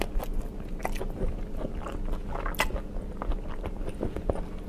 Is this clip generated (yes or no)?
no